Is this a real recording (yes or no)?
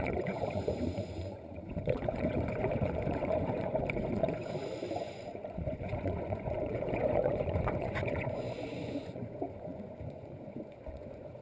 no